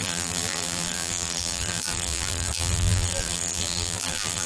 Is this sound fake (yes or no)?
yes